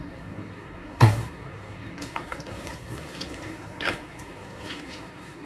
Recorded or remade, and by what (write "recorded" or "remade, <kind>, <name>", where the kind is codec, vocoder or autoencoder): remade, codec, SNAC